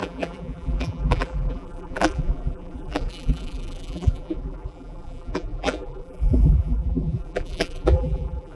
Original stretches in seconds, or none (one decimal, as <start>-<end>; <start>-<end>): none